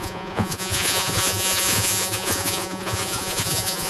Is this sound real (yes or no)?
no